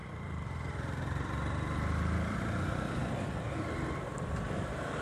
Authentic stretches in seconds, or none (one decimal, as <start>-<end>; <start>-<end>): 3.0-4.3